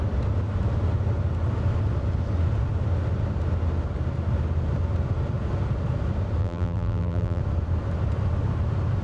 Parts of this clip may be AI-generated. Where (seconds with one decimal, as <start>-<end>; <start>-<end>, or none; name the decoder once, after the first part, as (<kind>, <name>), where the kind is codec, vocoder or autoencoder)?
6.4-7.4 (vocoder, BigVGAN v2)